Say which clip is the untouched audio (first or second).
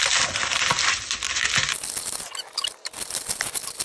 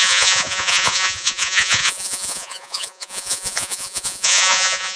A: first